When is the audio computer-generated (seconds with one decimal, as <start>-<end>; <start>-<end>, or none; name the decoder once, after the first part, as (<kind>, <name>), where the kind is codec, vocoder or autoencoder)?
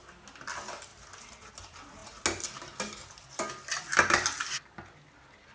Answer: none